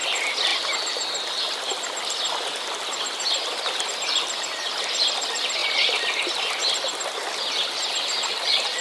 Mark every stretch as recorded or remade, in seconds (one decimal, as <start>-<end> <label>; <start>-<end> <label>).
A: 0.0-8.8 recorded